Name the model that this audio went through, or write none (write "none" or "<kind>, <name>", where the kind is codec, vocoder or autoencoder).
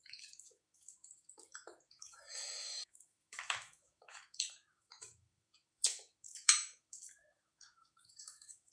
autoencoder, DAC-VAE